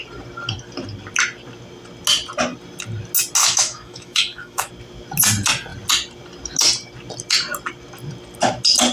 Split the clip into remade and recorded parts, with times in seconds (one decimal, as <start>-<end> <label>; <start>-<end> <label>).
0.0-3.4 recorded; 3.4-4.7 remade; 4.7-8.9 recorded